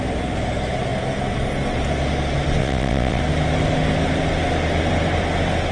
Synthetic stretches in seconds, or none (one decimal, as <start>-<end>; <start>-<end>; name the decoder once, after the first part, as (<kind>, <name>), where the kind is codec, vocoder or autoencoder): 2.6-3.2 (vocoder, WaveNeXt)